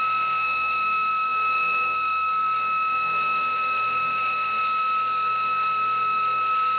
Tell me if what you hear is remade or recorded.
remade